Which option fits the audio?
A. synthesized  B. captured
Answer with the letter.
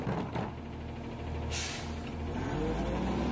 B